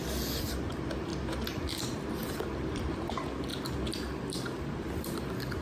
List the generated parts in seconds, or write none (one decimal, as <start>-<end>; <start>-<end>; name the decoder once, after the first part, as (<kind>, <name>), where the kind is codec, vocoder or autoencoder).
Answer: 1.1-2.9 (vocoder, BigVGAN v2)